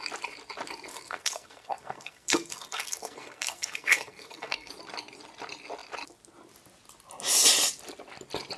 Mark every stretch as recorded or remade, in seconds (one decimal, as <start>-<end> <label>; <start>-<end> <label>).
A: 0.0-0.9 recorded; 0.9-4.7 remade; 4.7-8.6 recorded